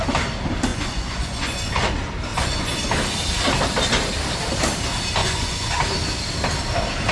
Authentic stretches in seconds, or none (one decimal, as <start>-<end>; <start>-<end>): 0.0-0.7; 1.8-2.3; 2.8-5.2; 5.7-7.1